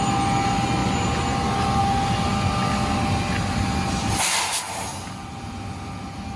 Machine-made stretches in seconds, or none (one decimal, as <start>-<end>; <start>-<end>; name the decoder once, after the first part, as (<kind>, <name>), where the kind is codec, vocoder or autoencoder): none